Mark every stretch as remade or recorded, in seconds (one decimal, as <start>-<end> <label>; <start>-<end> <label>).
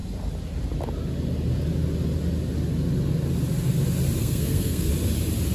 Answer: 0.0-4.2 recorded; 4.2-4.9 remade; 4.9-5.5 recorded